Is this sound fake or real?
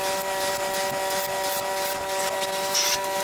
real